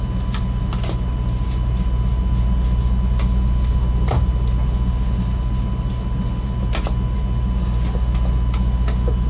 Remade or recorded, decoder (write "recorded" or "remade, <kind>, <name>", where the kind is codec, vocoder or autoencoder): recorded